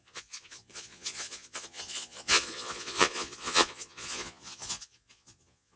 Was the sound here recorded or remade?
remade